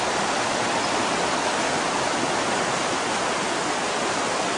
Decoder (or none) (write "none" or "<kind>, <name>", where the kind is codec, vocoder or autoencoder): none